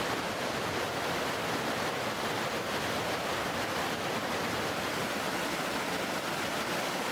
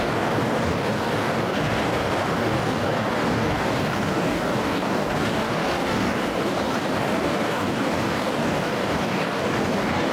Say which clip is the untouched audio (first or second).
first